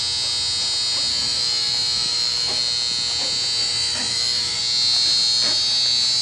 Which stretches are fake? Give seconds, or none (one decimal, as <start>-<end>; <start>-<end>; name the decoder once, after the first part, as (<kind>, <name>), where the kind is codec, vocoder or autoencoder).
1.1-2.6 (autoencoder, DAC-VAE); 3.6-4.6